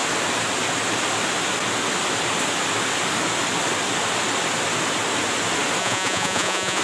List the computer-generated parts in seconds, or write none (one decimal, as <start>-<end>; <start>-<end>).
5.8-6.8